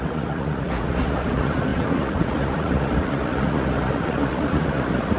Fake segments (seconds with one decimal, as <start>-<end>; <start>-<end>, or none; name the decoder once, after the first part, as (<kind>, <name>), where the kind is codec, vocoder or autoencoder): 0.0-5.2 (vocoder, Vocos)